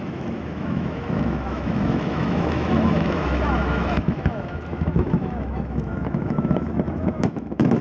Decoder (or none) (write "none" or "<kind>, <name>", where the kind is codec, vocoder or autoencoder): autoencoder, DAC-VAE